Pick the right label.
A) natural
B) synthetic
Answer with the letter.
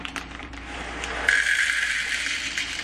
B